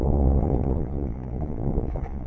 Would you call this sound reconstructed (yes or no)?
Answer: yes